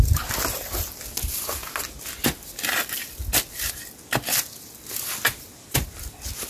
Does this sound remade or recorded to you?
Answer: recorded